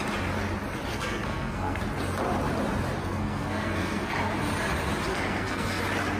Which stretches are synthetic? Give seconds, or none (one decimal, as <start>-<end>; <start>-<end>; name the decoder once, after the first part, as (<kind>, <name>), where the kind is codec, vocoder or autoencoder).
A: 0.9-1.8 (codec, SNAC); 3.0-4.1; 5.1-5.8

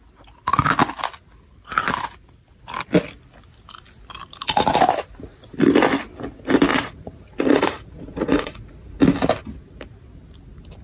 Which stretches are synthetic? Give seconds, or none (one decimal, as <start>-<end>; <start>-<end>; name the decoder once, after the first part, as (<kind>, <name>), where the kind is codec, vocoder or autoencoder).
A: 6.7-9.0 (vocoder, Vocos)

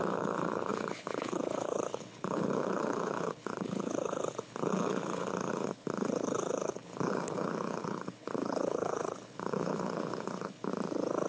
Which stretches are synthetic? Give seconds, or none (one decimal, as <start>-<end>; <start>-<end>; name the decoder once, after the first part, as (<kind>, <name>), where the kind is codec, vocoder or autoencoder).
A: 0.0-10.7 (codec, HILCodec)

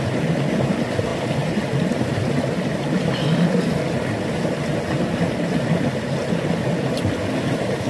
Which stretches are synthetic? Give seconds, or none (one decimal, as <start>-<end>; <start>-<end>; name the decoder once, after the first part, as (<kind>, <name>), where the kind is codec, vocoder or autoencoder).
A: 1.1-5.8 (vocoder, BigVGAN v2)

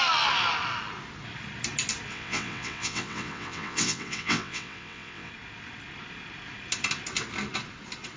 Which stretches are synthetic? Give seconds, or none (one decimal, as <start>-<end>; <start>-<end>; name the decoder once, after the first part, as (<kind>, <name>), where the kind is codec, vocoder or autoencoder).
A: 2.1-5.3 (vocoder, WaveNeXt)

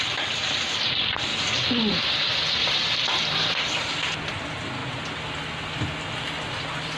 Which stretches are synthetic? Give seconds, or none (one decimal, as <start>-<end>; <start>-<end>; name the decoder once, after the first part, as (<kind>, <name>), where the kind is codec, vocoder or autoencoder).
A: 2.6-3.8 (vocoder, BigVGAN v2)

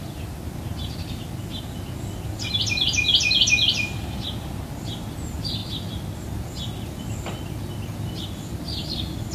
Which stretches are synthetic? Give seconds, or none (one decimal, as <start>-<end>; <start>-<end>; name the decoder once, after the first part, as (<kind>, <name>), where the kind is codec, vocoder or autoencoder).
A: none

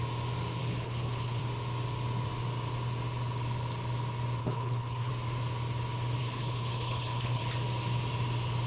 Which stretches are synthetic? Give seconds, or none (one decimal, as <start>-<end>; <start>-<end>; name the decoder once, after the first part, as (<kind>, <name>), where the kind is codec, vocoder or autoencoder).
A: 0.6-1.4 (codec, HILCodec); 4.4-5.1; 6.2-7.4